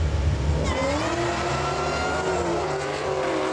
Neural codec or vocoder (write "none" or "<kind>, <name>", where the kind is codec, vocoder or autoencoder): none